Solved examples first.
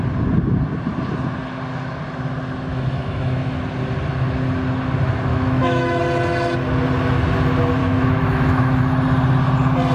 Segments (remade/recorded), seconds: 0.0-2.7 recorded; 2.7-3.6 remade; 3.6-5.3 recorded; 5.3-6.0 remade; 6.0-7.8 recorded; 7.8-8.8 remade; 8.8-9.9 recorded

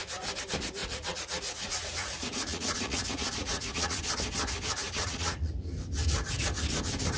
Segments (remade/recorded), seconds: 0.0-0.8 recorded; 0.8-4.0 remade; 4.0-4.8 recorded; 4.8-5.5 remade; 5.5-7.2 recorded